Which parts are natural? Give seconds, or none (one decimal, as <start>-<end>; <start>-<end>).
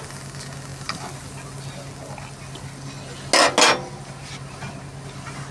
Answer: 0.0-5.5